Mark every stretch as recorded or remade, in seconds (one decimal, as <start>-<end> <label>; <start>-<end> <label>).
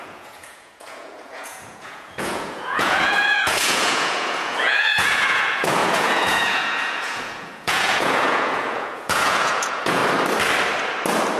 0.0-10.0 remade; 10.0-11.4 recorded